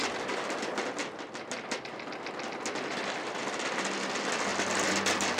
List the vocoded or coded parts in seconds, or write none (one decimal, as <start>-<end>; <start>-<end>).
none